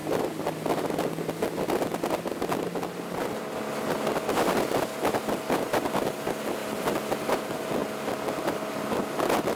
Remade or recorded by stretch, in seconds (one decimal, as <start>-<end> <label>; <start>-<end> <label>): 0.0-9.6 recorded